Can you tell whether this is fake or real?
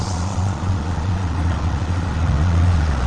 fake